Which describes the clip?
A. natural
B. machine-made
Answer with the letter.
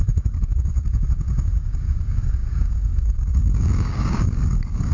B